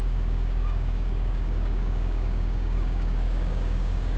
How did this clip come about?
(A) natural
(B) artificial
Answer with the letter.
B